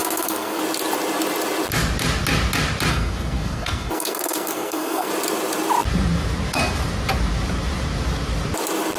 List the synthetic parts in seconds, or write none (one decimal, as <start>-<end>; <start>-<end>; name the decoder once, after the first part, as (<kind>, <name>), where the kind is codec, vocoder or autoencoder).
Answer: 0.0-0.6 (codec, SNAC); 2.9-5.1